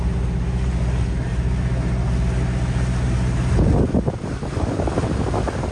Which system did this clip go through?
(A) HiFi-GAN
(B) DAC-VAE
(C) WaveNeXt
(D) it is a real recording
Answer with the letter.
D